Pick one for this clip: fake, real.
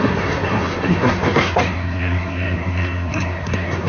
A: fake